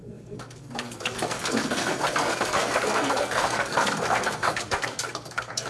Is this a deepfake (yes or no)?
yes